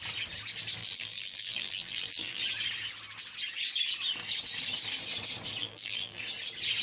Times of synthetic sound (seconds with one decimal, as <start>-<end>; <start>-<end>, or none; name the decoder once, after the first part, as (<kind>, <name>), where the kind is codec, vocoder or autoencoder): 0.8-2.4 (vocoder, BigVGAN v2); 5.6-6.2